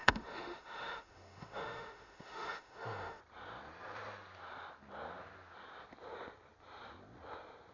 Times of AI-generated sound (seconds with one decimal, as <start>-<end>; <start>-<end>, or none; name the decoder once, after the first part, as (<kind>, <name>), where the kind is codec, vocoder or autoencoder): 0.0-3.2 (autoencoder, DAC-VAE)